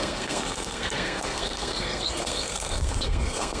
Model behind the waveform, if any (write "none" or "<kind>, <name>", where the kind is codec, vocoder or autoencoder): codec, SNAC